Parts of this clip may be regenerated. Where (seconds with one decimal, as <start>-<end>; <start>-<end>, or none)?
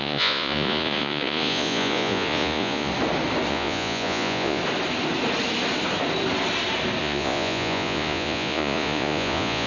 0.0-2.9; 3.5-4.6; 7.0-9.7